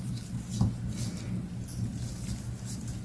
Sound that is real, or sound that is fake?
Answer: real